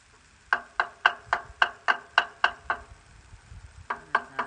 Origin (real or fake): real